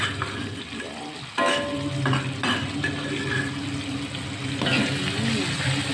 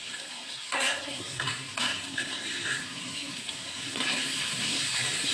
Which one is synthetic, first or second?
second